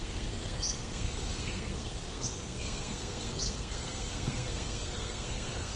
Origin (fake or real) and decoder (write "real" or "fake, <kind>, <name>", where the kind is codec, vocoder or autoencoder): fake, codec, SNAC